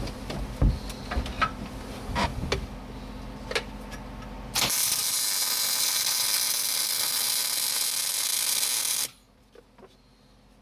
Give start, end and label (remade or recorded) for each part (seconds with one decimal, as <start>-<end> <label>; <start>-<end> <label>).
0.0-10.6 recorded